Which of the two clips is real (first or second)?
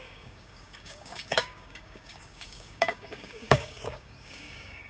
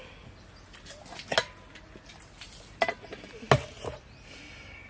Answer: second